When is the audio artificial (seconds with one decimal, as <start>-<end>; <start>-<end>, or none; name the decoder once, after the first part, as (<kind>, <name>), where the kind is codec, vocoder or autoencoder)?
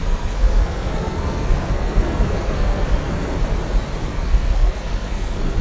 0.0-3.4 (codec, SNAC); 4.1-5.6